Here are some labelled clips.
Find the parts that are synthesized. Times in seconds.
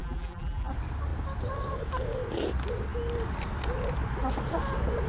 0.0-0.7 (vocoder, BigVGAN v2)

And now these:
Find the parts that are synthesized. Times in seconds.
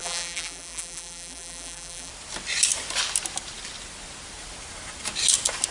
0.0-2.1 (vocoder, BigVGAN v2)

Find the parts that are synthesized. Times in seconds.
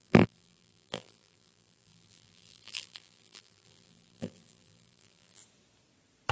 0.0-5.4 (vocoder, BigVGAN v2)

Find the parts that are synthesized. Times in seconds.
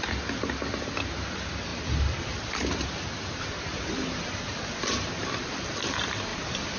1.7-5.1 (vocoder, BigVGAN v2); 6.3-6.8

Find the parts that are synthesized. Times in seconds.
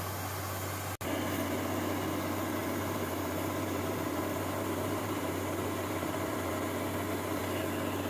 2.6-6.5 (vocoder, BigVGAN v2)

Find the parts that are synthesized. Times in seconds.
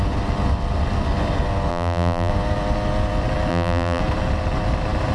1.7-2.3 (vocoder, BigVGAN v2); 3.5-4.0